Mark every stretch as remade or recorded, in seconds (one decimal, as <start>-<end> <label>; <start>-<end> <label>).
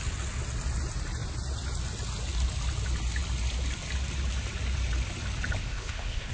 0.0-5.6 recorded; 5.6-6.3 remade